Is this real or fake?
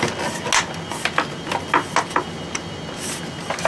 real